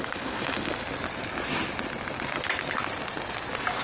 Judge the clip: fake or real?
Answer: real